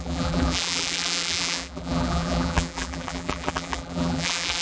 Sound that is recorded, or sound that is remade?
remade